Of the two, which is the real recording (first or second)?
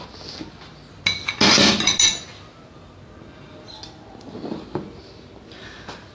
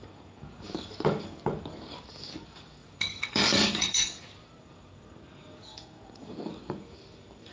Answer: first